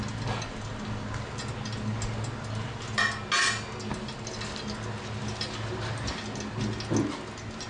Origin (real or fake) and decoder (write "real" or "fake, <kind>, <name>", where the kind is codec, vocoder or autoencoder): real